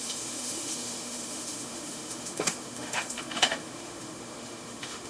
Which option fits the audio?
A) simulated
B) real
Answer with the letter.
A